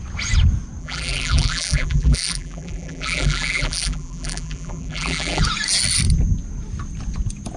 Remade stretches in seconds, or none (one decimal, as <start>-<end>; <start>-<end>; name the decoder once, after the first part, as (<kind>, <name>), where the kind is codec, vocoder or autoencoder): 0.8-5.4 (vocoder, BigVGAN v2)